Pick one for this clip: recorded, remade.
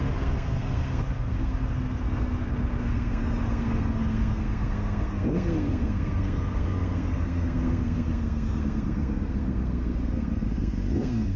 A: remade